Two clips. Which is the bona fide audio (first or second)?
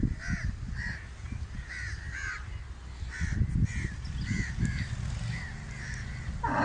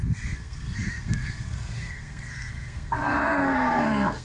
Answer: first